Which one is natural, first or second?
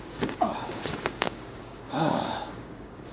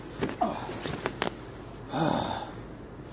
second